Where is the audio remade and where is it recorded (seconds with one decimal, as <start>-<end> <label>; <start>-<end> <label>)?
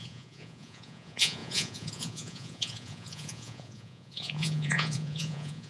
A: 0.0-5.7 remade